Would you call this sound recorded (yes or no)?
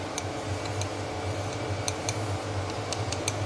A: no